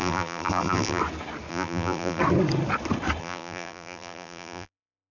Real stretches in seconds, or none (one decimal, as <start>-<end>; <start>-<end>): 1.0-1.5; 2.2-3.2